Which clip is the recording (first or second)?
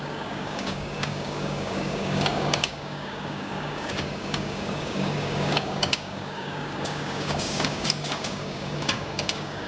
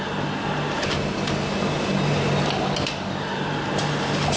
second